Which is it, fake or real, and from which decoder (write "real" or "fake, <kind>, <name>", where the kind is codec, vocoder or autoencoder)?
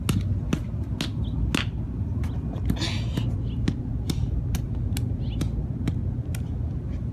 real